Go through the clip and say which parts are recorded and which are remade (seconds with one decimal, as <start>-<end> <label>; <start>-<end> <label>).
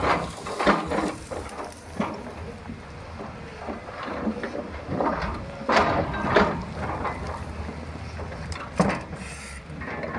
0.0-3.8 recorded; 3.8-4.6 remade; 4.6-10.2 recorded